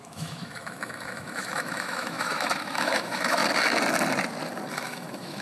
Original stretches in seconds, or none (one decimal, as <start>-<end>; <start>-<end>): 3.4-4.7